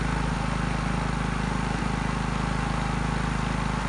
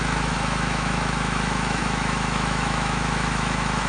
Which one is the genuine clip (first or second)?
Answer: first